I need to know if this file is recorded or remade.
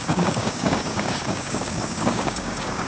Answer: remade